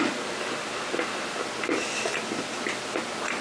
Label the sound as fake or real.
real